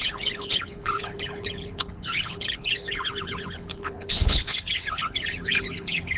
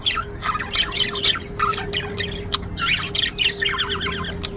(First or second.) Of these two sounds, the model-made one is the first